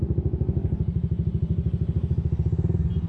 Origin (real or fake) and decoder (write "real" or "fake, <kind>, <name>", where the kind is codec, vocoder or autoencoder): real